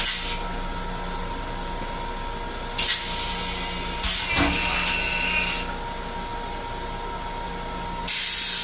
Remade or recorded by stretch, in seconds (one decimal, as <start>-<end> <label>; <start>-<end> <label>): 0.0-8.6 recorded